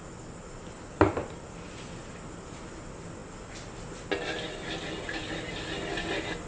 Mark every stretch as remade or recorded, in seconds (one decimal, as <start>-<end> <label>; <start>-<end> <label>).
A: 0.0-6.5 recorded